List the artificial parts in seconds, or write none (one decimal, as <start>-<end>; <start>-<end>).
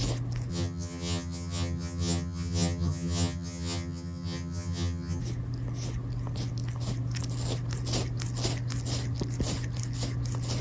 0.5-5.2